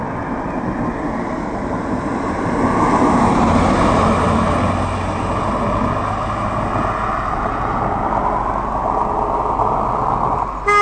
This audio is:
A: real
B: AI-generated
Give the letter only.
A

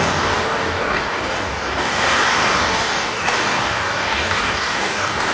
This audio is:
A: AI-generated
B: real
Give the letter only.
A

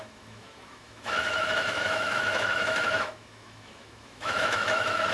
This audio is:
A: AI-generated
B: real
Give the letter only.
A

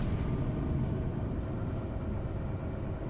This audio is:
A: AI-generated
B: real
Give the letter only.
B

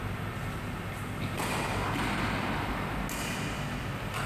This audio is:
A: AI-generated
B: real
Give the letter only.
B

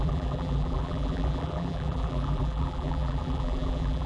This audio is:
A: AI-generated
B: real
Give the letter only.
A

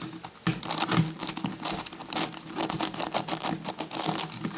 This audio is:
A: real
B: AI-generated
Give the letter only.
A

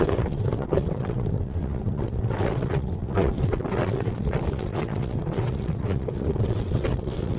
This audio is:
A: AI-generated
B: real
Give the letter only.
A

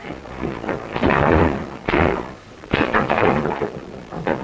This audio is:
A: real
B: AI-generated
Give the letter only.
B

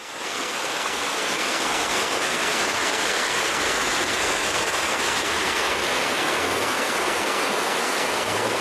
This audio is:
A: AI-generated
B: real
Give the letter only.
A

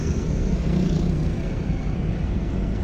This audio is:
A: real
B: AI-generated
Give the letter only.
B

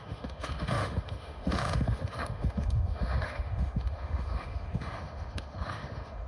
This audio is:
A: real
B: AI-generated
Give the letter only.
B